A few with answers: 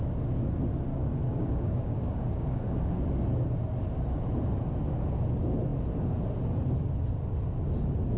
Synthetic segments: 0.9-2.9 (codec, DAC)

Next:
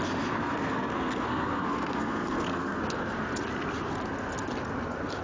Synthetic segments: 0.4-2.8 (codec, SNAC)

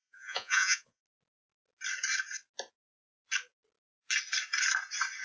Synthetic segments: 0.0-1.0 (vocoder, Vocos)

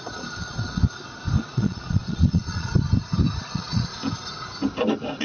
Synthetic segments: 0.0-0.8 (vocoder, Vocos); 1.4-2.7; 3.4-3.9